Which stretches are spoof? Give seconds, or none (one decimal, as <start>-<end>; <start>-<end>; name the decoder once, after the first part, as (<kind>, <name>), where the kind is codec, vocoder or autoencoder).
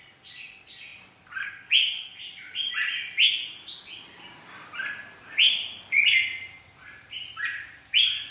none